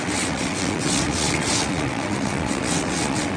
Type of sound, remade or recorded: remade